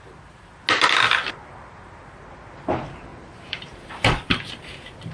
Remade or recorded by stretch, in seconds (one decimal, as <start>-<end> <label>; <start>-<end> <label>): 0.0-3.1 recorded; 3.1-4.5 remade; 4.5-5.1 recorded